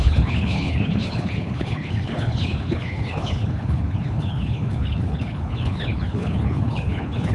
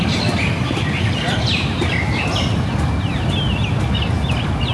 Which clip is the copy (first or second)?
first